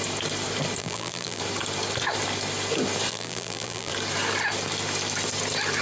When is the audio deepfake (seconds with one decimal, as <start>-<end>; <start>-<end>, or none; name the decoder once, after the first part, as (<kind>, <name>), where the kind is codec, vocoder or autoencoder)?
0.8-1.4 (vocoder, BigVGAN v2); 3.1-3.9